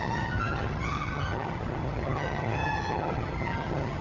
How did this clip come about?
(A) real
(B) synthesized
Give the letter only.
B